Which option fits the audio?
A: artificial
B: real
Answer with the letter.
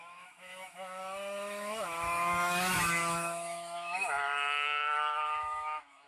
A